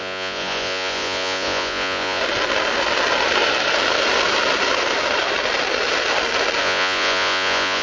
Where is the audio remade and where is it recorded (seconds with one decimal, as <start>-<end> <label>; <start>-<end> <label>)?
0.0-2.2 remade; 2.2-6.6 recorded; 6.6-7.8 remade